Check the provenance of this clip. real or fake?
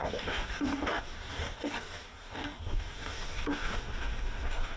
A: fake